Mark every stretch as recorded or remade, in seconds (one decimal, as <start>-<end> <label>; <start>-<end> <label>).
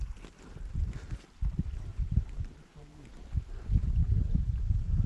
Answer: 0.0-1.9 recorded; 1.9-3.1 remade; 3.1-4.0 recorded; 4.0-5.1 remade